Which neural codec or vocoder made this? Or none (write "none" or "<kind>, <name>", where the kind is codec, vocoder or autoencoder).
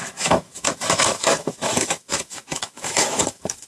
autoencoder, DAC-VAE